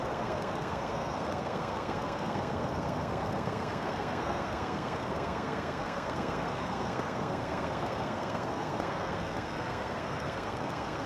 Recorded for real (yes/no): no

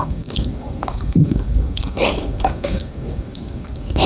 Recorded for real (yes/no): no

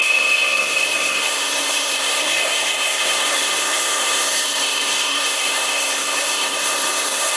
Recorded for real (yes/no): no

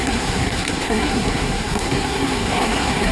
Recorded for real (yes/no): no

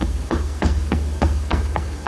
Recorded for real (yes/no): no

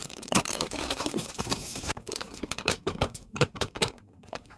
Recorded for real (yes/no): no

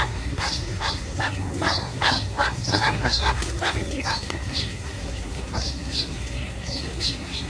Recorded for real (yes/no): no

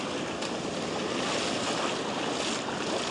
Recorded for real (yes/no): yes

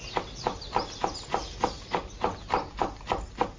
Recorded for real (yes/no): yes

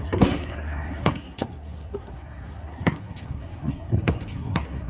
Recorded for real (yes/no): no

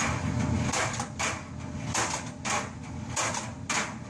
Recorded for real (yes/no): yes